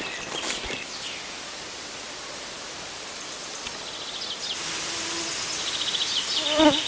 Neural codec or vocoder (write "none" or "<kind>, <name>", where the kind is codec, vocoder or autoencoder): none